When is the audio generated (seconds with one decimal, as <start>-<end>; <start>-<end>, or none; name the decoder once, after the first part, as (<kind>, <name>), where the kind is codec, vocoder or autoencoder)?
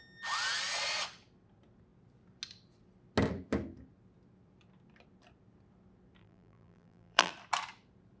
6.2-7.3 (vocoder, BigVGAN v2)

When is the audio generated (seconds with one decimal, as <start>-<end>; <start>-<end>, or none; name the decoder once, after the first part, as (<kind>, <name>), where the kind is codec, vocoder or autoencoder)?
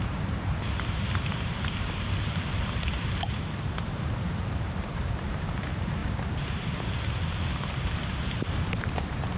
0.0-6.0 (vocoder, BigVGAN v2); 8.9-9.4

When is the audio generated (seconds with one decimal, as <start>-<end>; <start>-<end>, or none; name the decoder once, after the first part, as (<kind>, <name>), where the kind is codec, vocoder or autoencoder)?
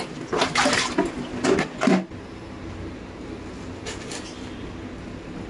none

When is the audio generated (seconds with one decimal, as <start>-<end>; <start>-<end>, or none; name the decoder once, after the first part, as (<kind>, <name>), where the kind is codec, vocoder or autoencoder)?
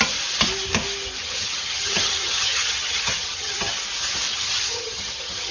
1.2-3.7 (vocoder, HiFi-GAN); 4.3-5.5